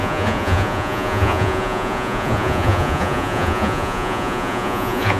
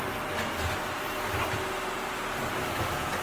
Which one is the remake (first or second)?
first